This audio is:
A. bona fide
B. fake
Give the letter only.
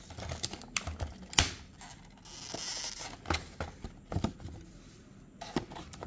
A